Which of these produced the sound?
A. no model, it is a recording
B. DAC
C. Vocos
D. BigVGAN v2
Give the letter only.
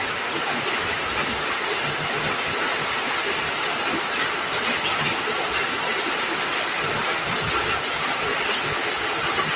A